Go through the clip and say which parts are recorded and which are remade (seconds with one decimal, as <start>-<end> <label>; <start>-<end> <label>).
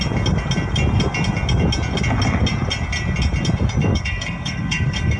0.0-3.8 recorded; 3.8-5.2 remade